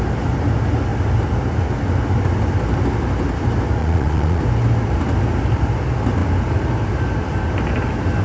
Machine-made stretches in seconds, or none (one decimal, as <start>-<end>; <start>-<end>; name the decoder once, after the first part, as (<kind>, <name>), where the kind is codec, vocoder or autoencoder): 3.8-4.4 (vocoder, Vocos)